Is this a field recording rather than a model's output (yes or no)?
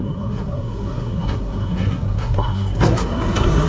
no